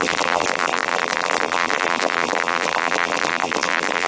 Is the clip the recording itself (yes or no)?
no